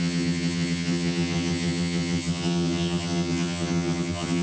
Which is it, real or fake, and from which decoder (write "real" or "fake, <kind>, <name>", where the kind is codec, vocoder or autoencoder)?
fake, vocoder, HiFi-GAN